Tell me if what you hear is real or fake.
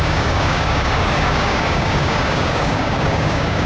fake